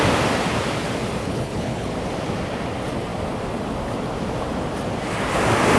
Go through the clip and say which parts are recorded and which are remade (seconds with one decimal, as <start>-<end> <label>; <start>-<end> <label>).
0.0-1.2 recorded; 1.2-1.9 remade; 1.9-5.8 recorded